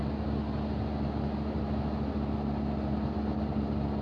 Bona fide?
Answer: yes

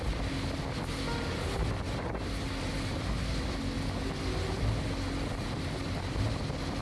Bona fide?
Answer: yes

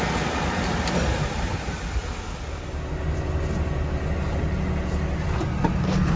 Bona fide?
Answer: yes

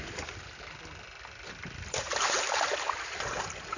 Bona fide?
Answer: yes